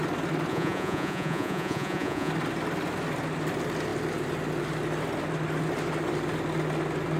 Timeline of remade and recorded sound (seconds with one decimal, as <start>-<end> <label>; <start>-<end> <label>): 0.0-0.5 recorded; 0.5-2.3 remade; 2.3-7.2 recorded